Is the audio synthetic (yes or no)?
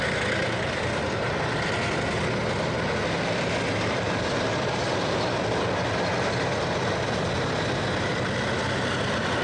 no